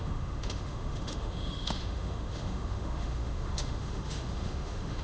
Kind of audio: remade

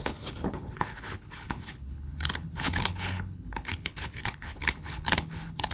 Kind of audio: remade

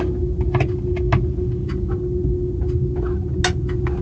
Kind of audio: recorded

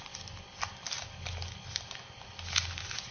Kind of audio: recorded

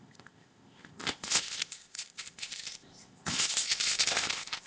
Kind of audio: remade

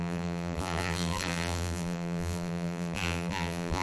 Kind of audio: remade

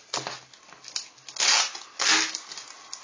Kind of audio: recorded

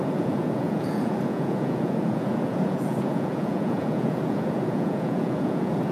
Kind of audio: remade